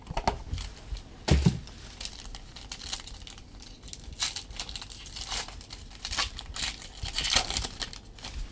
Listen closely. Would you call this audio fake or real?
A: real